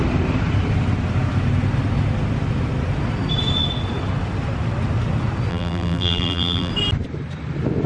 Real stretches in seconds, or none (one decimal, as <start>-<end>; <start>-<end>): 0.0-5.5; 6.7-7.9